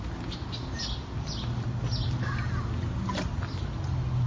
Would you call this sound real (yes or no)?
yes